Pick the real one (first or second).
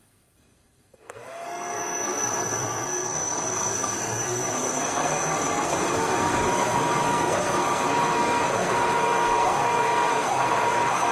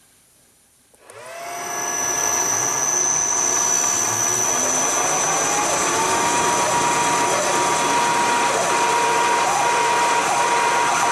second